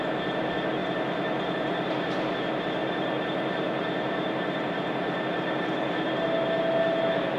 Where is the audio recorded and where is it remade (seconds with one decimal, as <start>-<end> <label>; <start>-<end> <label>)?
0.0-0.8 recorded; 0.8-2.4 remade; 2.4-2.8 recorded; 2.8-6.1 remade; 6.1-7.4 recorded